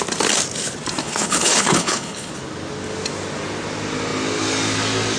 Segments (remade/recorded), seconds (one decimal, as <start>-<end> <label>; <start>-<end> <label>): 0.0-1.0 recorded; 1.0-2.3 remade; 2.3-5.2 recorded